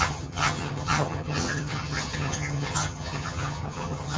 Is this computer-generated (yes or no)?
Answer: yes